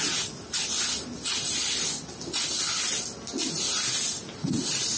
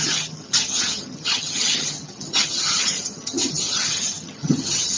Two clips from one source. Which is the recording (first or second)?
first